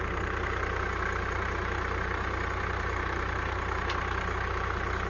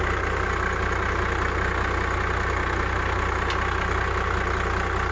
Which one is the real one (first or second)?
second